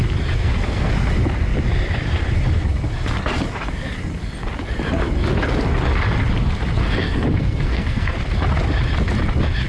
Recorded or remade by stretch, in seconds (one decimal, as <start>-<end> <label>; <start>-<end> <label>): 0.0-0.4 recorded; 0.4-0.9 remade; 0.9-6.8 recorded; 6.8-8.2 remade; 8.2-9.7 recorded

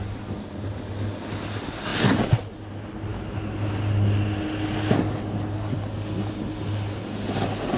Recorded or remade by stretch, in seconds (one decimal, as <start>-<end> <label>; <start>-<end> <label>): 0.0-7.8 recorded

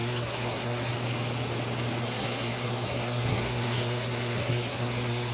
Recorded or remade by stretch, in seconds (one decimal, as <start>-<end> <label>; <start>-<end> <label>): 0.0-0.9 remade; 0.9-2.0 recorded; 2.0-5.3 remade

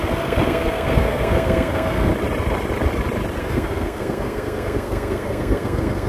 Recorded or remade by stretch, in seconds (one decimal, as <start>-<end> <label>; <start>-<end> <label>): 0.0-2.1 remade; 2.1-3.4 recorded; 3.4-6.1 remade

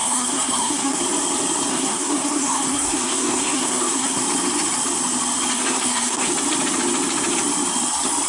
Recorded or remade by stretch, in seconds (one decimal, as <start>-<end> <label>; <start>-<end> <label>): 0.0-1.0 remade; 1.0-1.7 recorded; 1.7-4.2 remade; 4.2-5.5 recorded; 5.5-6.3 remade; 6.3-8.3 recorded

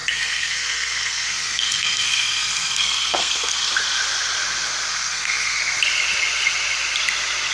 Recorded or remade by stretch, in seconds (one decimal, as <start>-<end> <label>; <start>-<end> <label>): 0.0-3.7 remade; 3.7-4.9 recorded; 4.9-5.6 remade; 5.6-7.5 recorded